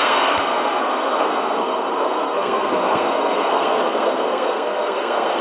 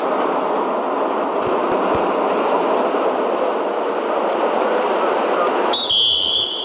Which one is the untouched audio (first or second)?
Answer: second